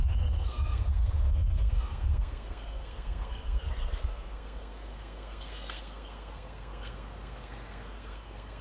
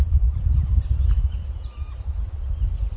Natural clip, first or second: second